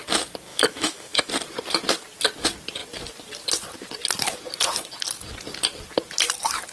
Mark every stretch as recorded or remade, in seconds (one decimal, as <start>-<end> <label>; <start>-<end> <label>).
0.0-0.5 recorded; 0.5-1.3 remade; 1.3-6.7 recorded